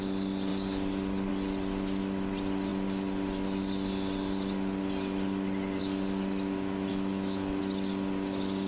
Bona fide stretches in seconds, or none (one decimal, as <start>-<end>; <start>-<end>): 0.0-6.9; 7.6-8.7